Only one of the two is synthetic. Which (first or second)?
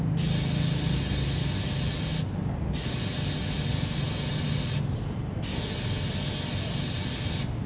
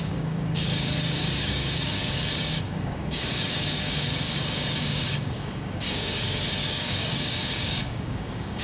second